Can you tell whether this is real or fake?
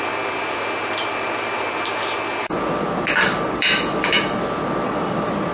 real